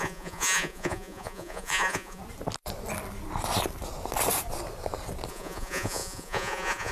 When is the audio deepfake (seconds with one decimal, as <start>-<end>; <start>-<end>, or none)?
0.0-2.2; 5.3-6.9